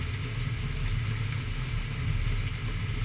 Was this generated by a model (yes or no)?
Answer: no